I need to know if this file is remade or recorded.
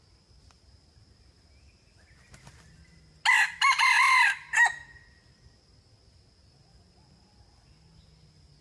recorded